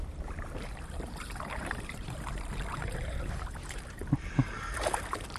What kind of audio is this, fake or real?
fake